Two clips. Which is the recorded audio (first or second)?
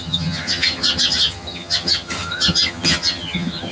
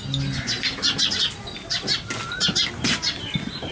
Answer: second